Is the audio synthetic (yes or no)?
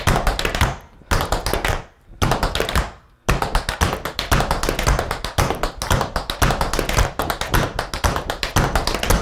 no